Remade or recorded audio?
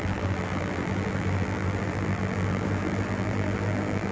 remade